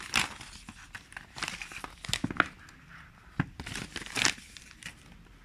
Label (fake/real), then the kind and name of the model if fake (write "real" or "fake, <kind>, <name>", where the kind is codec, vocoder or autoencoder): real